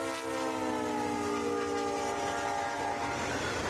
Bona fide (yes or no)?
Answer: yes